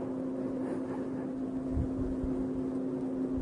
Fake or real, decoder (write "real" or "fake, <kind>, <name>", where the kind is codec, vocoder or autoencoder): real